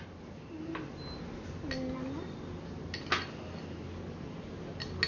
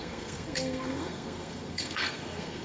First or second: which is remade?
second